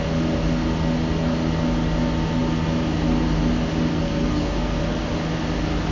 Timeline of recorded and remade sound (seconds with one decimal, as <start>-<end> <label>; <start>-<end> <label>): 0.0-3.9 recorded; 3.9-4.8 remade; 4.8-5.9 recorded